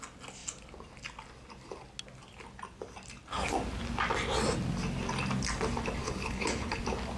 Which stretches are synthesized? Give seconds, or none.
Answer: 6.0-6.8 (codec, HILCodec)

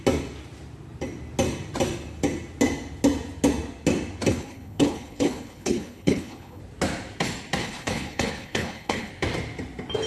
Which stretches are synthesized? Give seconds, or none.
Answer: 4.3-6.6 (codec, HILCodec); 7.6-9.1

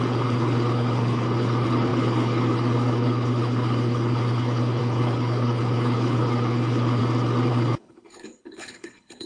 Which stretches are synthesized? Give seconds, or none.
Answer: 0.0-7.0 (codec, HILCodec); 7.5-9.3

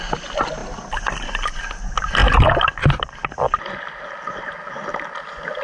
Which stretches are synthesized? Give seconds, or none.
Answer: none

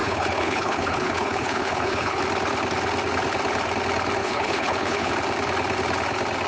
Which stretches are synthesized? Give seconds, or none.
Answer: 0.0-2.2 (codec, HILCodec); 4.2-5.1

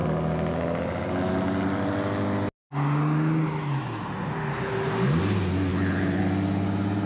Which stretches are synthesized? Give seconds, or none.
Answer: 5.7-6.2 (codec, HILCodec)

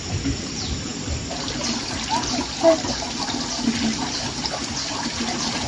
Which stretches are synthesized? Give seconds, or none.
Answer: none